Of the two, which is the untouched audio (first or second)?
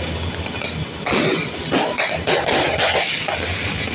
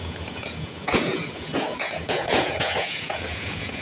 first